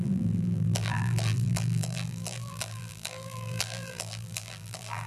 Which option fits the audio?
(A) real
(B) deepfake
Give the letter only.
B